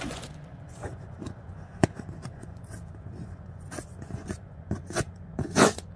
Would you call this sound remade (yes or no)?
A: yes